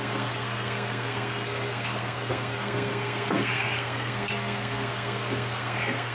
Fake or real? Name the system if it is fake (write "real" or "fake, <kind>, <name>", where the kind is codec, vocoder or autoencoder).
fake, codec, SNAC